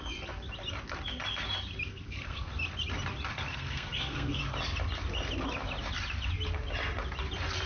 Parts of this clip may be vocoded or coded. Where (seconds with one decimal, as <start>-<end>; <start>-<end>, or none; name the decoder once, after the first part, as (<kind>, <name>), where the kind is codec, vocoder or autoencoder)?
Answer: 1.9-2.5 (codec, SNAC); 3.5-4.4